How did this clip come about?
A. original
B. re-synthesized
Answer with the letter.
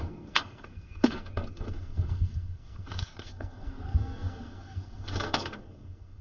B